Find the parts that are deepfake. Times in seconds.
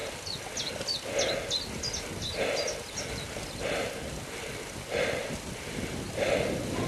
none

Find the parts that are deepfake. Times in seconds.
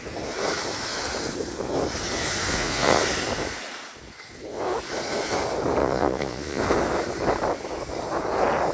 2.5-3.0 (vocoder, Vocos); 5.8-6.6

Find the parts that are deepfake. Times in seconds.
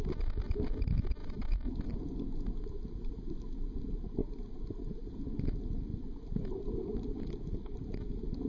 5.9-7.2 (vocoder, BigVGAN v2)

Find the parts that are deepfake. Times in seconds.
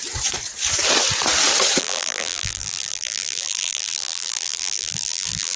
1.8-5.6 (vocoder, BigVGAN v2)